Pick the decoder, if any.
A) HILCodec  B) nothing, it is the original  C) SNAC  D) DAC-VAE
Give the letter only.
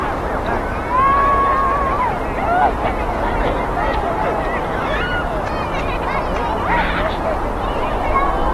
B